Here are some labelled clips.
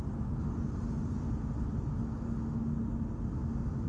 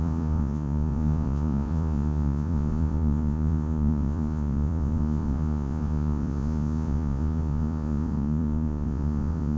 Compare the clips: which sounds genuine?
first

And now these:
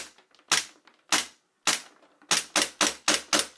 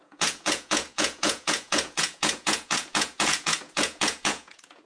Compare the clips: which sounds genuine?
first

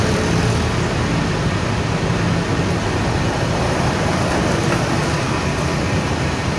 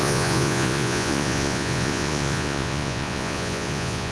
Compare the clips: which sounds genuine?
first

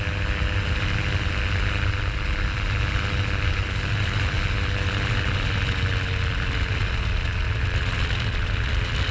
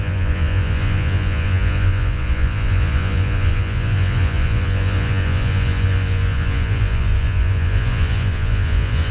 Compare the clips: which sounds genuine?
first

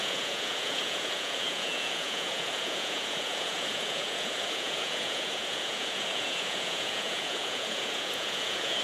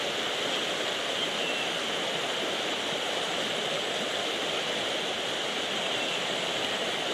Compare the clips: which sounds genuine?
second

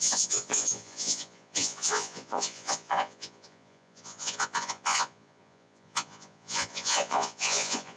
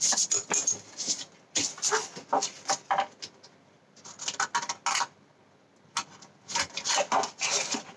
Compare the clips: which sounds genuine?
second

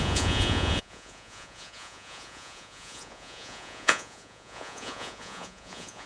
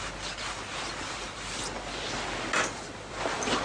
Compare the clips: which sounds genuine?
second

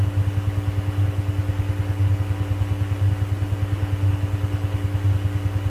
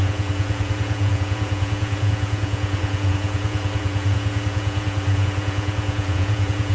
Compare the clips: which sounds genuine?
first